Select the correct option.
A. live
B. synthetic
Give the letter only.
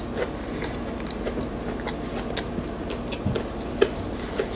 A